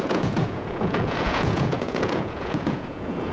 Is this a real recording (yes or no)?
no